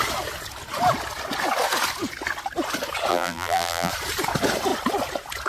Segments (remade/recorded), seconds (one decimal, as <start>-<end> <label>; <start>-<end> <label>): 0.0-3.1 recorded; 3.1-3.9 remade; 3.9-5.5 recorded